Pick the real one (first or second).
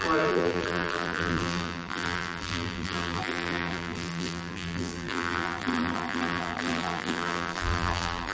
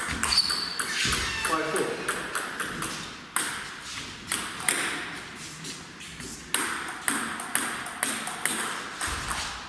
second